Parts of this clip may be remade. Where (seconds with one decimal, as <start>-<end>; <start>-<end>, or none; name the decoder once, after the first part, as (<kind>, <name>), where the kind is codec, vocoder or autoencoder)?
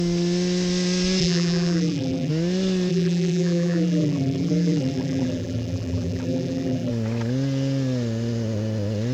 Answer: 1.2-2.3 (vocoder, BigVGAN v2); 2.9-6.9